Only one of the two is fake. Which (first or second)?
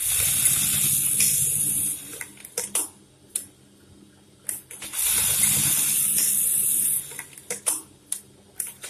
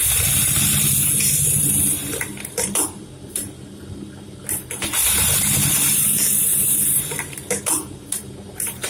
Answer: second